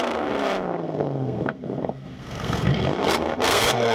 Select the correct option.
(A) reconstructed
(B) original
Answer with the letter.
A